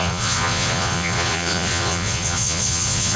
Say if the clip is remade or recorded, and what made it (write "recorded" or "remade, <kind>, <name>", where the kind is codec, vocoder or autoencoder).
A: remade, vocoder, Vocos